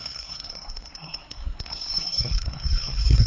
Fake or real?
fake